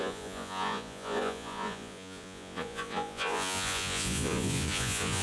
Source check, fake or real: fake